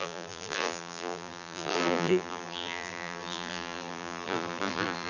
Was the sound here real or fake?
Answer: fake